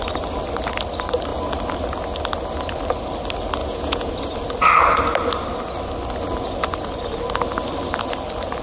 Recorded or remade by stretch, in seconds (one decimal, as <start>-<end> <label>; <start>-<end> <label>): 0.0-3.6 recorded; 3.6-4.1 remade; 4.1-8.6 recorded